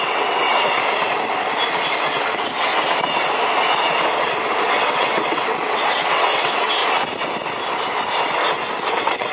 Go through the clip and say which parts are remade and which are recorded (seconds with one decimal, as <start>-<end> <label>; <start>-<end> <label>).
0.0-0.8 remade; 0.8-2.0 recorded; 2.0-2.7 remade; 2.7-4.6 recorded; 4.6-6.8 remade; 6.8-8.9 recorded; 8.9-9.3 remade

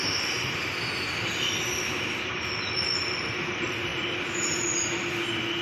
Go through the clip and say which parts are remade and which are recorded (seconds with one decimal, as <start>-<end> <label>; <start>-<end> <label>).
0.0-5.6 recorded

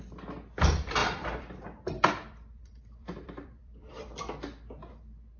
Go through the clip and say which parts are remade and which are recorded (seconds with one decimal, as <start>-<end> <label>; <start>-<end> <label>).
0.0-1.0 recorded; 1.0-4.2 remade; 4.2-5.4 recorded

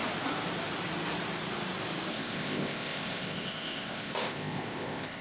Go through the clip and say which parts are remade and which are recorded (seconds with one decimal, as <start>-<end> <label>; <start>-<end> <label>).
0.0-2.1 recorded; 2.1-5.2 remade

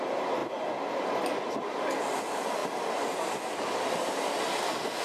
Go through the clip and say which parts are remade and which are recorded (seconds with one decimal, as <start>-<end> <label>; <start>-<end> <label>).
0.0-5.0 recorded

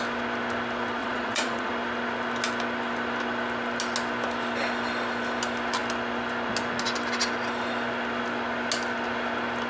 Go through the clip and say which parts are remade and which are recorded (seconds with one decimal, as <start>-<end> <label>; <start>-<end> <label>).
0.0-1.0 recorded; 1.0-1.7 remade; 1.7-9.7 recorded

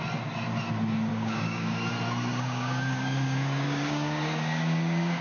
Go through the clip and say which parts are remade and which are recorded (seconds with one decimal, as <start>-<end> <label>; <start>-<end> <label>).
0.0-1.1 recorded; 1.1-1.9 remade; 1.9-2.3 recorded; 2.3-5.2 remade